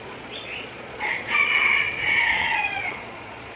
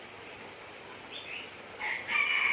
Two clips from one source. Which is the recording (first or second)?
second